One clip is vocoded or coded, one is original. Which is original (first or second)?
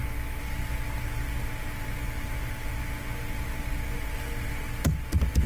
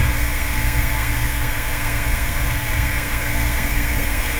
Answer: first